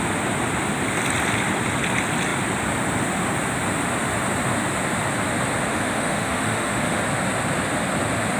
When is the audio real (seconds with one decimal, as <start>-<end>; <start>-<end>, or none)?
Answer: 0.0-5.7; 7.0-8.4